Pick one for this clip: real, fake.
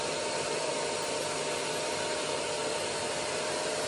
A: real